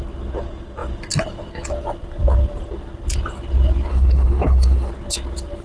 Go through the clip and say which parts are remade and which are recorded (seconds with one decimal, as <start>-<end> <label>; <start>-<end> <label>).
0.0-3.9 recorded; 3.9-4.9 remade; 4.9-5.6 recorded